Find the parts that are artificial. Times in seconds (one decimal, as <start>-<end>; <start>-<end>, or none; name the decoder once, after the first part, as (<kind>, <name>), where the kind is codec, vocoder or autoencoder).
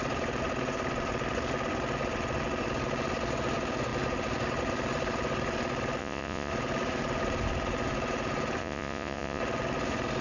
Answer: 6.0-6.5 (vocoder, Vocos); 8.6-9.4